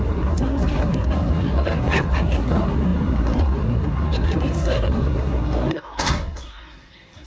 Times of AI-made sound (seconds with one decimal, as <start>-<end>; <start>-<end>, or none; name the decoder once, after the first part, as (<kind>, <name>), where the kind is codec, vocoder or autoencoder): 0.0-7.3 (codec, SNAC)